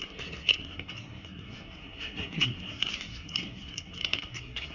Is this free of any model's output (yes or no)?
no